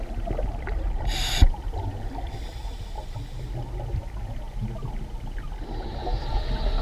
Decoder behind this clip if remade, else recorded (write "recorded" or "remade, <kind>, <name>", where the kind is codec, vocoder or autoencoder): recorded